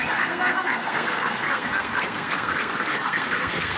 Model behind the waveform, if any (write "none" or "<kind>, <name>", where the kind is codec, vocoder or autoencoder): codec, SNAC